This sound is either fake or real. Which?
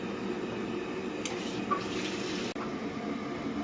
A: real